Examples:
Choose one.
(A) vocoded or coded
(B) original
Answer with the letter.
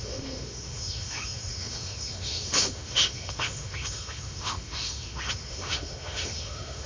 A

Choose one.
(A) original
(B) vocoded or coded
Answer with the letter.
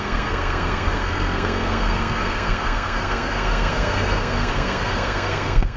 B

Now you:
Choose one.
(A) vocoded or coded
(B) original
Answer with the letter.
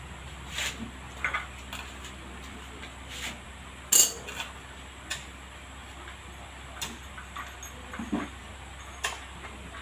B